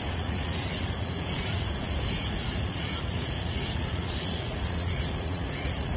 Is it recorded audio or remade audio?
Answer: remade